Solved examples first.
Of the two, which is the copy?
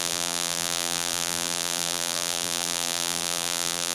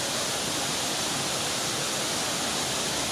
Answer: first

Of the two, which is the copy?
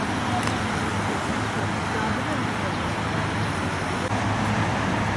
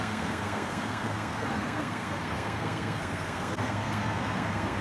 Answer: second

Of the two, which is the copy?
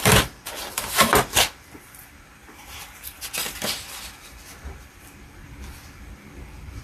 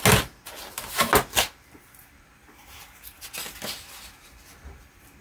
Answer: first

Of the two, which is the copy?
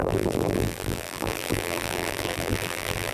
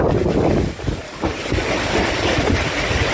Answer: first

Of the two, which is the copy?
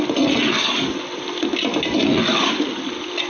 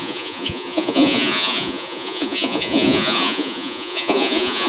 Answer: second